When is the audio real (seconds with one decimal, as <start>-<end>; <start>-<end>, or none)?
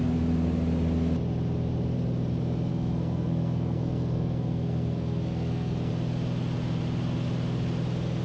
0.0-2.7; 5.9-8.2